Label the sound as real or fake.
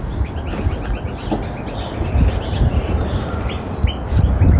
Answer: real